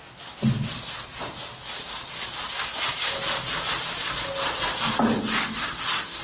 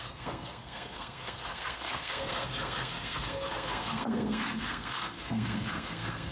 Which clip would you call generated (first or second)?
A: second